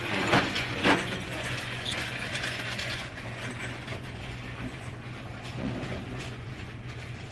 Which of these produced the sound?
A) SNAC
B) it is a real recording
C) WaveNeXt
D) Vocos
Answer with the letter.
D